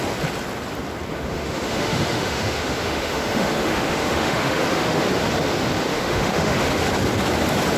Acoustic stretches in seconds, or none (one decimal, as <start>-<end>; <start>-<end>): 0.0-1.1; 5.1-5.9; 6.9-7.8